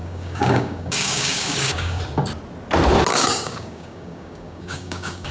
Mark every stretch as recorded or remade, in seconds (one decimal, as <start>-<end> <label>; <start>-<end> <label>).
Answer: 0.0-2.0 remade; 2.0-3.1 recorded; 3.1-5.3 remade